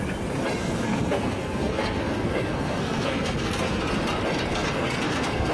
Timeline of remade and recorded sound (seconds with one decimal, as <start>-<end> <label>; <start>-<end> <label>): 0.0-0.6 recorded; 0.6-3.8 remade; 3.8-4.5 recorded; 4.5-5.5 remade